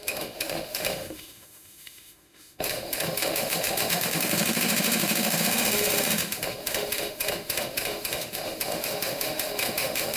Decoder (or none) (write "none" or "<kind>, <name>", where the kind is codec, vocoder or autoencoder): autoencoder, DAC-VAE